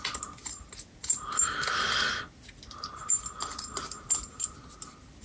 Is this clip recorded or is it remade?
recorded